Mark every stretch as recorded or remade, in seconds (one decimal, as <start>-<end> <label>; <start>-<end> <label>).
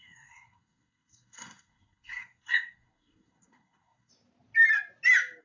0.0-4.1 remade; 4.1-5.4 recorded